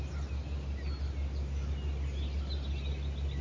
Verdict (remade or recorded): recorded